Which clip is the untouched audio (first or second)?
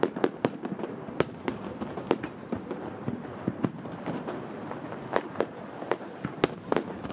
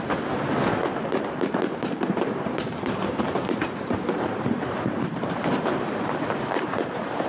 first